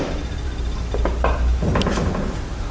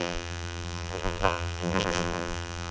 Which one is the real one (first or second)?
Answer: first